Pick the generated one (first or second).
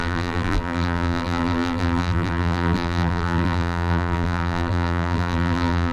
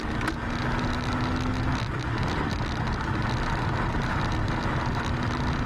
first